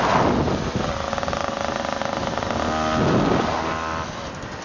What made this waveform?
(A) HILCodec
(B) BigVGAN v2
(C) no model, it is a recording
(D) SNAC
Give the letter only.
C